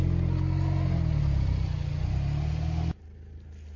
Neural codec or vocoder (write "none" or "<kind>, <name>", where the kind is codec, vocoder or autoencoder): none